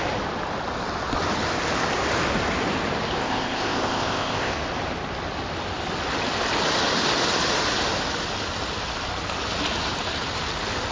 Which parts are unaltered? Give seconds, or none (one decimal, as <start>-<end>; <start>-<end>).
0.0-3.2; 4.5-10.9